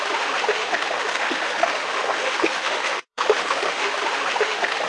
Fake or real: fake